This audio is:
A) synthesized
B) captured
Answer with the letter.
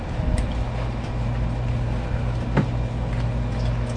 B